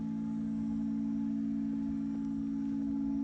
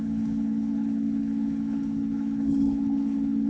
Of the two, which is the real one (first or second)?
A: first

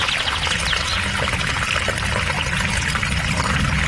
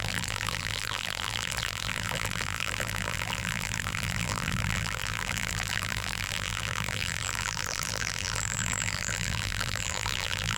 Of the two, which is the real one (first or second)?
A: first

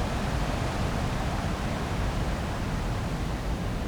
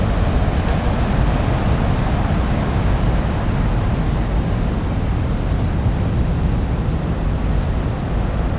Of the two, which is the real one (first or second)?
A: second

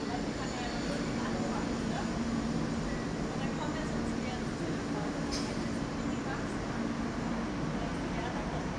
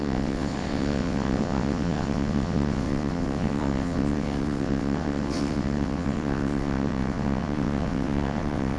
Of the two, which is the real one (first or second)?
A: first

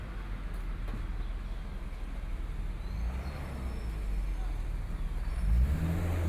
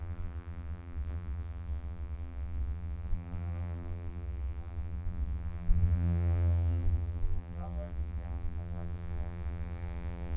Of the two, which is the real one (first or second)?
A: first